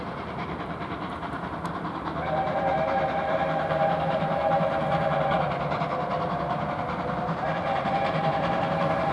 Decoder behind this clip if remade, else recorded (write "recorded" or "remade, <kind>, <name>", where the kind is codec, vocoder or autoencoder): remade, vocoder, BigVGAN v2